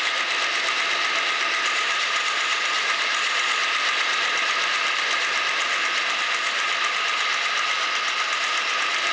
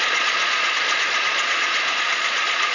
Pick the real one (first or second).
first